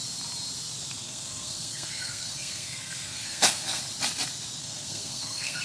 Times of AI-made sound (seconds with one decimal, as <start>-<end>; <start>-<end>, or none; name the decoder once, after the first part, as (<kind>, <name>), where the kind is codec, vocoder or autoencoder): 1.0-3.8 (codec, SNAC); 4.6-5.6